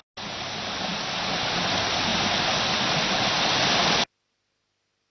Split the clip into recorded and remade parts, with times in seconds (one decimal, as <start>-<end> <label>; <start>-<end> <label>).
0.0-5.1 recorded